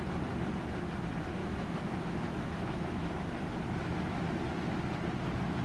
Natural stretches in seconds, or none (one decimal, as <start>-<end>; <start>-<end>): 0.0-1.4; 4.2-5.6